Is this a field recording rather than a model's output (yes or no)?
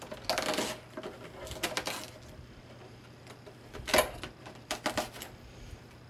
yes